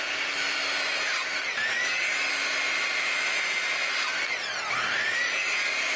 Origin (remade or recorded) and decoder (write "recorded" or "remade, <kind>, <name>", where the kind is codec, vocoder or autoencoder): recorded